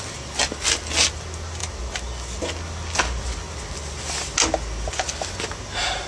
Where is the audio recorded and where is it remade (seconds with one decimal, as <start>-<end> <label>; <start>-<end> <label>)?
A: 0.0-6.1 recorded